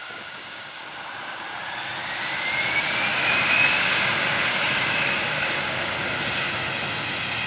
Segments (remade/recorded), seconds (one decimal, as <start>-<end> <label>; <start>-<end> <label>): 0.0-0.8 remade; 0.8-3.1 recorded; 3.1-5.9 remade; 5.9-7.5 recorded